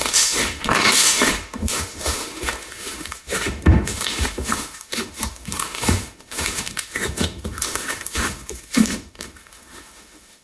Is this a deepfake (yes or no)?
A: yes